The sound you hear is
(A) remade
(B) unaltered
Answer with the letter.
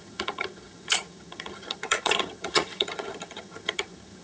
A